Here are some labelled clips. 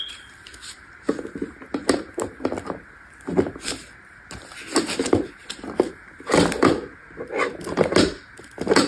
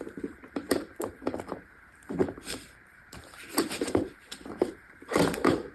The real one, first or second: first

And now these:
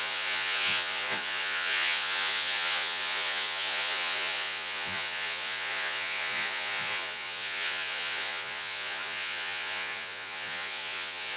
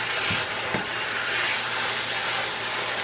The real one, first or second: second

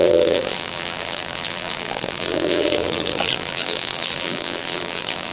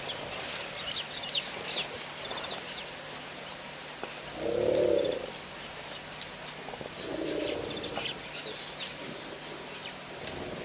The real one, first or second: second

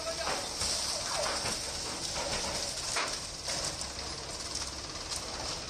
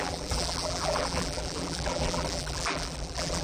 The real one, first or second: first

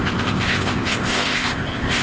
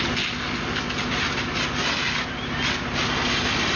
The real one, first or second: second